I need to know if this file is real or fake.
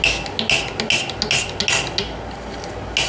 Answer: real